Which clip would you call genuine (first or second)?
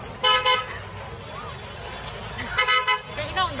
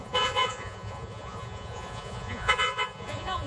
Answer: first